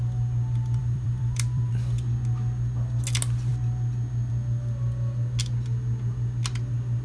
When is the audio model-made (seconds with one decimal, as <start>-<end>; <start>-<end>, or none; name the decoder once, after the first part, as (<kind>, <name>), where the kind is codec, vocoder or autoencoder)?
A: 0.8-1.7 (vocoder, BigVGAN v2)